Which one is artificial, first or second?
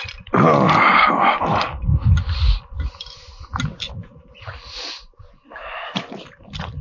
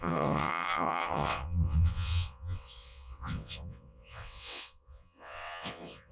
second